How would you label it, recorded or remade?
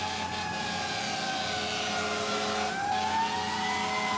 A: recorded